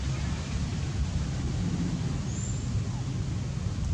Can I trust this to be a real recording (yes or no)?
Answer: yes